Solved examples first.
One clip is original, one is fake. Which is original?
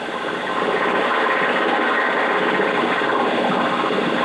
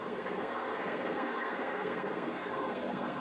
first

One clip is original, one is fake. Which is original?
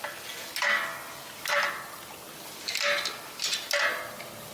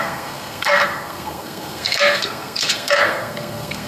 first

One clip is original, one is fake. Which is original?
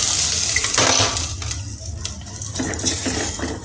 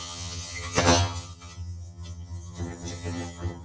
first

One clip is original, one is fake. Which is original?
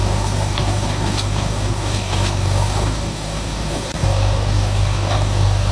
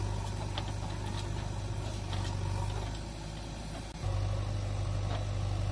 second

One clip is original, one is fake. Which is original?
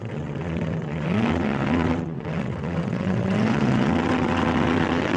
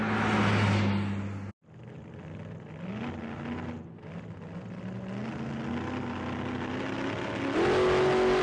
second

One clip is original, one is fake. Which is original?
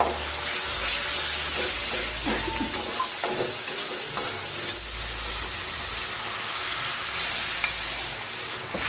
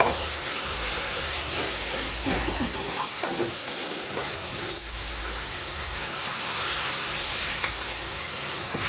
first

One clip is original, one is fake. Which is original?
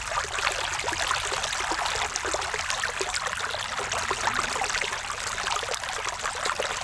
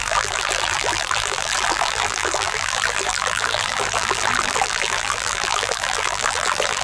first